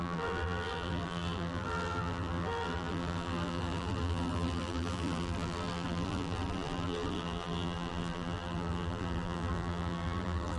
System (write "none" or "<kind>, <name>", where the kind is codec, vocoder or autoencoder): vocoder, BigVGAN v2